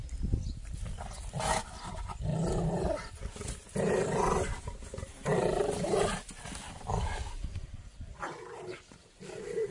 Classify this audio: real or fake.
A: real